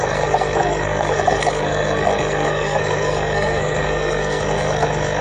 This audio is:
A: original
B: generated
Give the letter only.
B